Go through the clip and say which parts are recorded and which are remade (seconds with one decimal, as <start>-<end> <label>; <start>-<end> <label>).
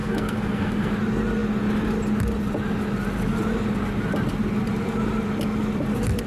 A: 0.0-0.9 remade; 0.9-6.3 recorded